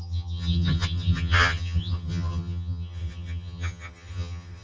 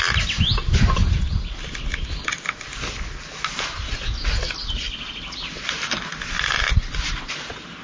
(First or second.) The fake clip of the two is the first